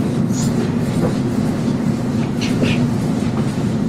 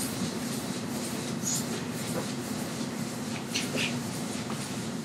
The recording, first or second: first